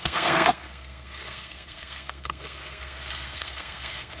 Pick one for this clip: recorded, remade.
remade